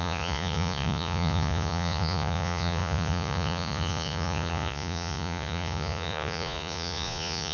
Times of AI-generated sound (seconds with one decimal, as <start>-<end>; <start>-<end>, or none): 0.0-7.5